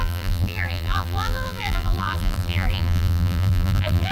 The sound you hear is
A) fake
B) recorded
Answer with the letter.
A